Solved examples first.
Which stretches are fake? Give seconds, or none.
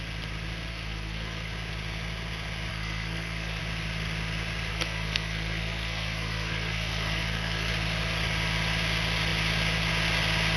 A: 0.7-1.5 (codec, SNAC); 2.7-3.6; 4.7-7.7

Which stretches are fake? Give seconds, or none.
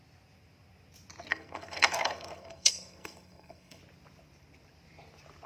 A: 1.3-3.8 (codec, SNAC)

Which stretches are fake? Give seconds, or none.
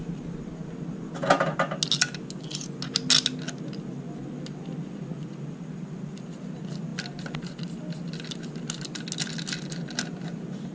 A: none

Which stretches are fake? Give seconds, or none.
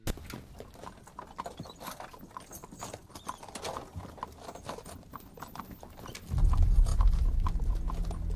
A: none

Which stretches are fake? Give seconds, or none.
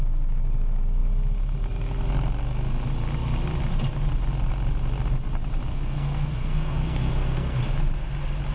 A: 5.7-7.6 (codec, SNAC)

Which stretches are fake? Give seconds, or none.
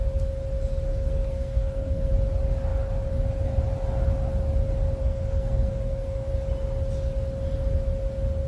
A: 0.9-2.1 (codec, SNAC); 5.0-6.3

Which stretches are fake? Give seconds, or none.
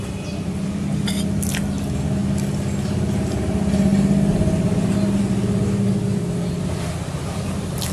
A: none